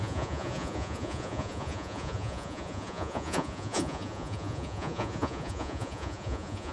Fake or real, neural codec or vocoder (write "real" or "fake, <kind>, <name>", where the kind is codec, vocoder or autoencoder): fake, vocoder, Vocos